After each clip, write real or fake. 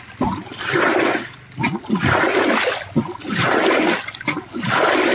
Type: real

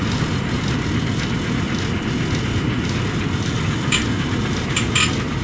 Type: real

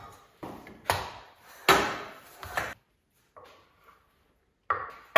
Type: real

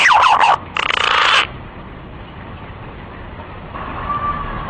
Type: real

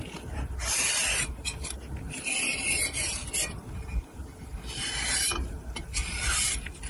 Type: fake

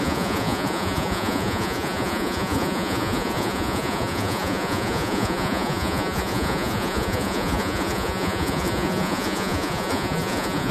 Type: fake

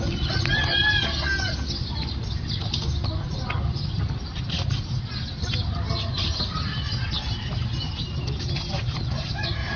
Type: real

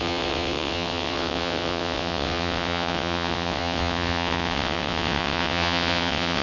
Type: fake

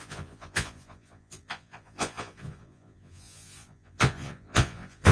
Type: fake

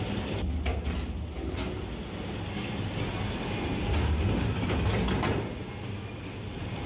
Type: real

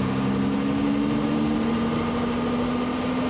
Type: real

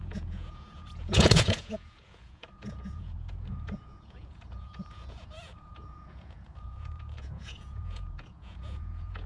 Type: fake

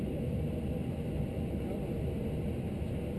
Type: real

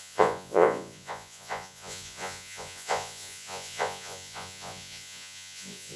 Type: fake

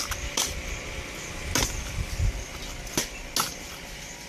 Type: real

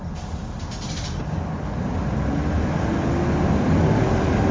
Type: real